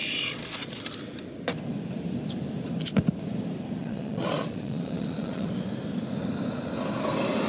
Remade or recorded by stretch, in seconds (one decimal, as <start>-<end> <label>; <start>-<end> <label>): 0.0-0.8 remade; 0.8-3.8 recorded; 3.8-5.5 remade; 5.5-7.5 recorded